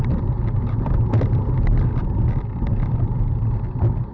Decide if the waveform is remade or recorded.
recorded